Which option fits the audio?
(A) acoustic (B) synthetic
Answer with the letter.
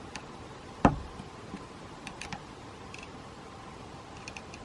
A